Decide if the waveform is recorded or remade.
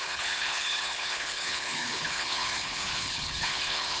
remade